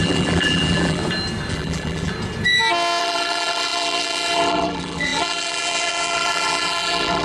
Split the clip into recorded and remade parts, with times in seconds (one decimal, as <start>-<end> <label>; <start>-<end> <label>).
0.0-1.0 remade; 1.0-1.5 recorded; 1.5-2.1 remade; 2.1-3.0 recorded; 3.0-7.2 remade